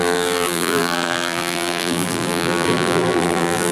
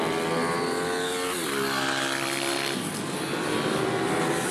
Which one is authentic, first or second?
second